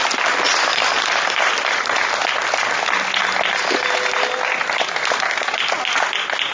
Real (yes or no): yes